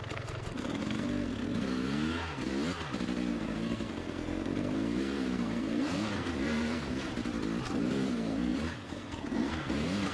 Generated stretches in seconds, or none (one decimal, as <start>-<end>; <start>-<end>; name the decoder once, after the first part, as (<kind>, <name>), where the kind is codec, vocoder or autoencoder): 0.0-2.5 (codec, SNAC); 3.3-7.1; 7.7-10.1